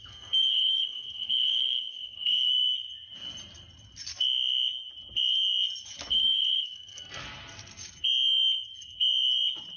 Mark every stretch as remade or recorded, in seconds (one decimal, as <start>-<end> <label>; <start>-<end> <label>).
0.0-2.5 remade; 2.5-6.1 recorded; 6.1-7.2 remade; 7.2-9.8 recorded